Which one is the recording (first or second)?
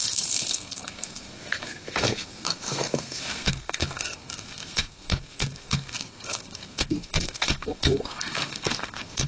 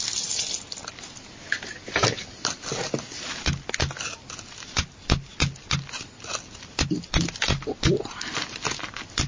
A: second